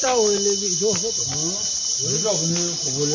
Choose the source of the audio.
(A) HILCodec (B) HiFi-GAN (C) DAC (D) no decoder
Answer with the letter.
D